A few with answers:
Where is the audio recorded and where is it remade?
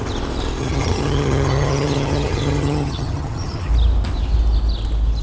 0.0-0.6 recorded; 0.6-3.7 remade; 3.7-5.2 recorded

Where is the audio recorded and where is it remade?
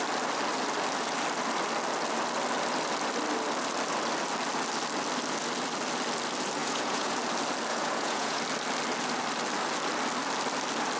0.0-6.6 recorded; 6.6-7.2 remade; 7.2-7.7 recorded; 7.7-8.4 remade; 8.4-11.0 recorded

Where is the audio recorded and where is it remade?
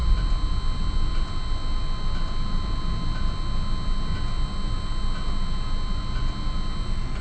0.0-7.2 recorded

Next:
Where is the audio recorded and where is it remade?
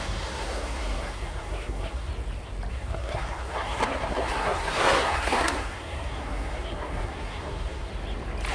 0.0-2.1 remade; 2.1-2.7 recorded; 2.7-7.9 remade; 7.9-8.5 recorded